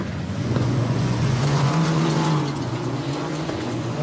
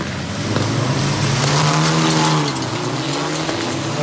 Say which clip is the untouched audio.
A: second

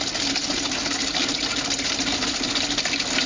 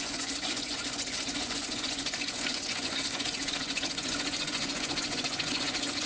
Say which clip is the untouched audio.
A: first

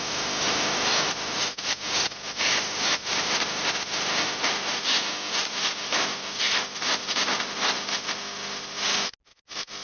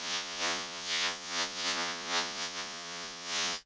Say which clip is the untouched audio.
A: first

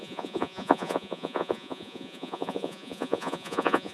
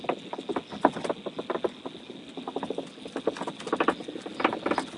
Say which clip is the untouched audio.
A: second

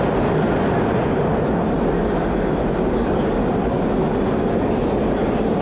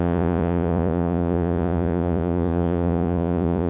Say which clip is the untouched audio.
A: first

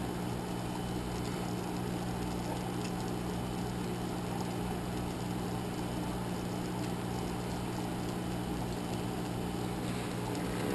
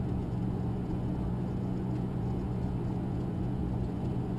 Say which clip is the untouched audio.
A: first